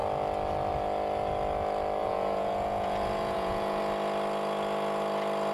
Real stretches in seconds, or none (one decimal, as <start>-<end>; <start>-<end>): 0.0-2.0; 3.8-5.5